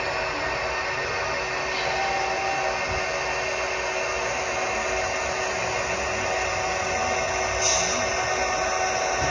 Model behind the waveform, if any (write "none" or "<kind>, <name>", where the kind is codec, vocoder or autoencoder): none